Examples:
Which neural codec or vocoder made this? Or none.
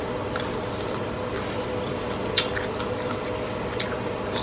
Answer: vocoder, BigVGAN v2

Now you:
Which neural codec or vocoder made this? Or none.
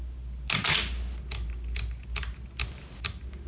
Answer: none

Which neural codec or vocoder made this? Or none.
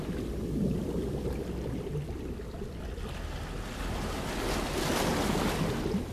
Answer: none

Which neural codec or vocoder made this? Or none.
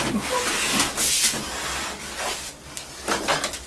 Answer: none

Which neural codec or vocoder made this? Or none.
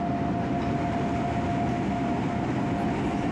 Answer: none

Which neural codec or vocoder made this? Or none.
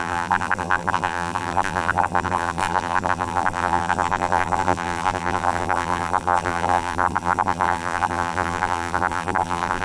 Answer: vocoder, BigVGAN v2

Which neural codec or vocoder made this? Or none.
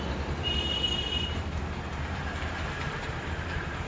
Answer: vocoder, BigVGAN v2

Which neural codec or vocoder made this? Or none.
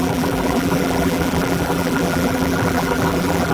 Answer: vocoder, BigVGAN v2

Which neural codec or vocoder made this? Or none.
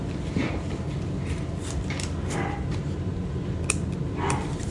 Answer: none